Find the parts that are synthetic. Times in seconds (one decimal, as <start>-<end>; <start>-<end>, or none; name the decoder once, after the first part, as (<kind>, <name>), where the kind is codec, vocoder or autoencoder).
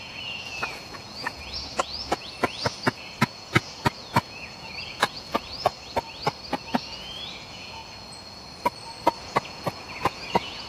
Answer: 0.0-5.7 (vocoder, Vocos); 6.9-7.8; 9.2-10.7